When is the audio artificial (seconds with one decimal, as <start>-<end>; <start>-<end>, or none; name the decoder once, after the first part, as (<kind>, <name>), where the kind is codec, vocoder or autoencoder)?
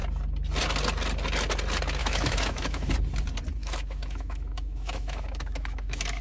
2.0-2.9 (autoencoder, DAC-VAE); 3.6-6.2